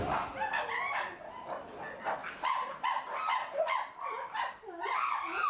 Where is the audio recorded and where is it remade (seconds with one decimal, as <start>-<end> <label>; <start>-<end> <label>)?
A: 0.0-5.5 recorded